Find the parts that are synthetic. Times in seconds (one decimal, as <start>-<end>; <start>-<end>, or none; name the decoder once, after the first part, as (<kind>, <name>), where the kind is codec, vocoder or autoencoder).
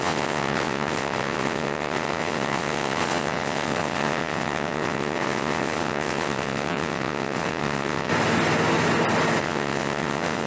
0.0-8.1 (vocoder, WaveNeXt); 9.4-10.5